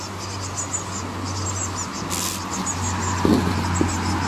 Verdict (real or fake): real